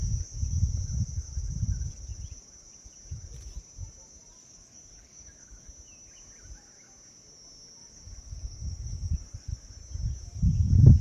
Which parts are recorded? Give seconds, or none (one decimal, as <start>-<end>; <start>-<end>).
0.0-4.4; 5.7-7.8; 9.7-11.0